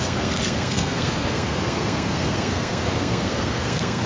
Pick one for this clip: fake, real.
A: fake